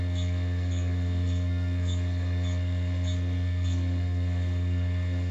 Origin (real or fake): fake